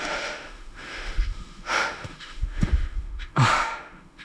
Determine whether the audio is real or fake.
fake